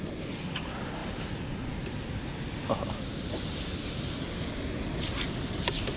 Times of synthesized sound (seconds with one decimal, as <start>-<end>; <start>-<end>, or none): none